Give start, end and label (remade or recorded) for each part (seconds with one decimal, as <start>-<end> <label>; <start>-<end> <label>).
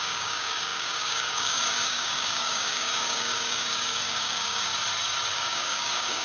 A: 0.0-4.7 remade; 4.7-5.3 recorded; 5.3-6.2 remade